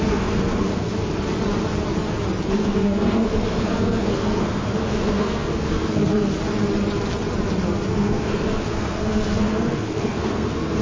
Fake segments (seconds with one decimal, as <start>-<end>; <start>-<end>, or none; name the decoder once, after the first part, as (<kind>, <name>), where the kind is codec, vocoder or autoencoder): 0.0-1.0 (codec, SNAC); 2.5-6.3; 7.9-10.8